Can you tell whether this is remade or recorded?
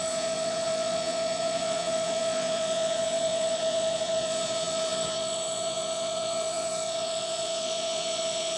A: remade